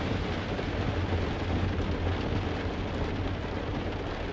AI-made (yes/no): no